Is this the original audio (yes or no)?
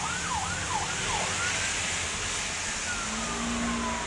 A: yes